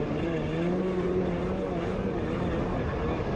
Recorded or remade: recorded